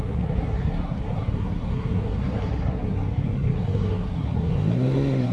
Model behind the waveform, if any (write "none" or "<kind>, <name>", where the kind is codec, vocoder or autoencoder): codec, SNAC